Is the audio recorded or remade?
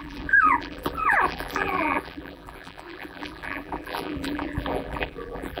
remade